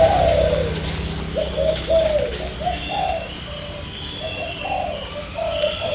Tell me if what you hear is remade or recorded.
recorded